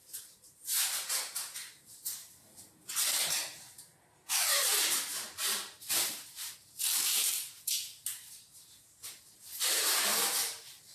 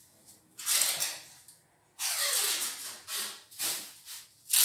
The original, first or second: second